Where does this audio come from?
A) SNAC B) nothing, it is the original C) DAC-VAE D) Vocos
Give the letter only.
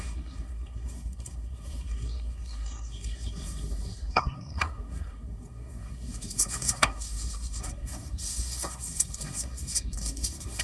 A